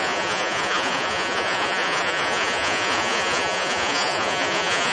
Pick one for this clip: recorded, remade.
remade